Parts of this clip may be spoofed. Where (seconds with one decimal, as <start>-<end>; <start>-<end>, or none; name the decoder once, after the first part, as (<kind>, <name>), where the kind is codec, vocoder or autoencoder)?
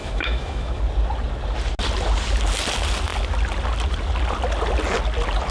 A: 0.0-0.8 (autoencoder, DAC-VAE)